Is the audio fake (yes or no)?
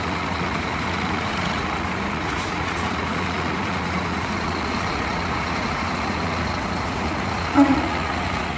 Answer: yes